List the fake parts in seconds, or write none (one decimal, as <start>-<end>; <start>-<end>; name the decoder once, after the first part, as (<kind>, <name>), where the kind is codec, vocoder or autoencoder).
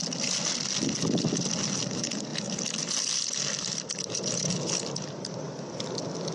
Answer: 2.3-6.3 (vocoder, BigVGAN v2)